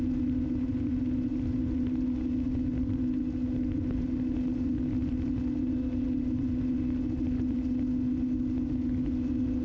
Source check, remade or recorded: recorded